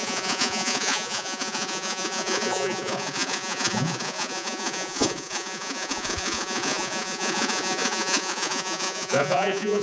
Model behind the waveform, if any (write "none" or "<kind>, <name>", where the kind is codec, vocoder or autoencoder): vocoder, Vocos